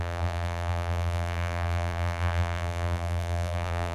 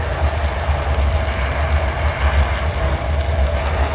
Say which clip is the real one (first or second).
second